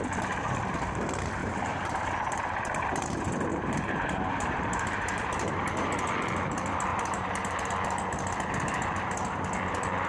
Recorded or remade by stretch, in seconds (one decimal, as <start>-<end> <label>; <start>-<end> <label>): 0.0-1.4 recorded; 1.4-2.4 remade; 2.4-3.5 recorded; 3.5-5.5 remade; 5.5-6.9 recorded; 6.9-7.7 remade; 7.7-10.1 recorded